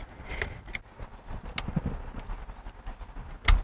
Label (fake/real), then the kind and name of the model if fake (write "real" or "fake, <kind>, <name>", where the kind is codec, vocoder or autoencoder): real